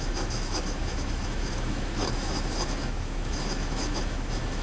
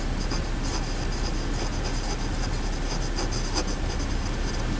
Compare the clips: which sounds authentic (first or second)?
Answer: second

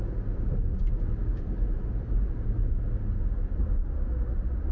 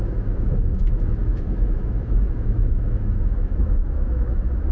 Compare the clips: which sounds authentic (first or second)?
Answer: first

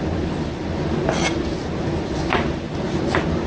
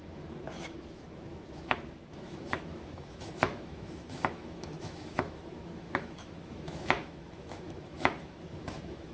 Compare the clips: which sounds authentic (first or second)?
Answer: first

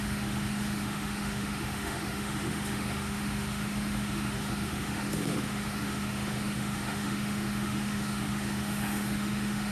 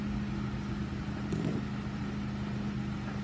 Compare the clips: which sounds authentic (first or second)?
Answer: second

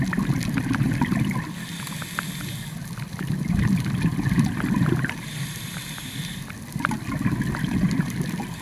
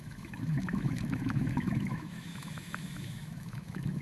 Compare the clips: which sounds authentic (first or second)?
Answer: first